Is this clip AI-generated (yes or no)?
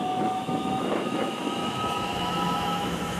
yes